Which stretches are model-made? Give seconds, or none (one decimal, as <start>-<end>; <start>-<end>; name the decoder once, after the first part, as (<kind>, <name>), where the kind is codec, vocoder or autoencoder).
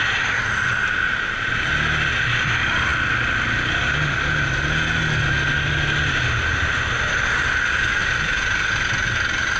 none